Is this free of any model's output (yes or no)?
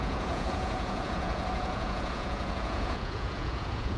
no